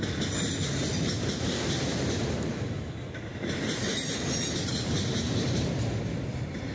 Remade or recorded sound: recorded